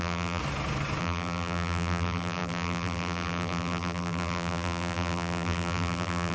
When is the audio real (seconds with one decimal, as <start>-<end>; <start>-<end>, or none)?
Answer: 0.4-1.0